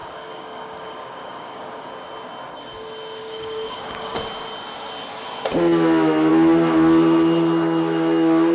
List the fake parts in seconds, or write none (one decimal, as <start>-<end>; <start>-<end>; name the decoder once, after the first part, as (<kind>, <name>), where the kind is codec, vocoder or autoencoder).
0.0-1.9 (codec, DAC); 3.2-4.2